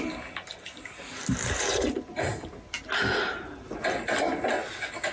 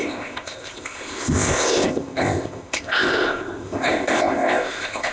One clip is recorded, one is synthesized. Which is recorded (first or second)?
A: first